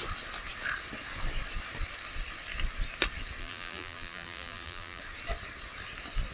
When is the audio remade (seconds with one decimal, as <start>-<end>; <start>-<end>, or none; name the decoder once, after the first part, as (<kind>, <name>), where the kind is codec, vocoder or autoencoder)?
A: 3.4-5.0 (vocoder, BigVGAN v2)